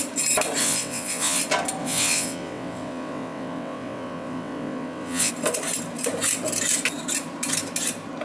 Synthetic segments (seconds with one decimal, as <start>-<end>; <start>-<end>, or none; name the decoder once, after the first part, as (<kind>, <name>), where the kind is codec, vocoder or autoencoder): 0.6-1.4 (vocoder, WaveNeXt); 1.8-5.3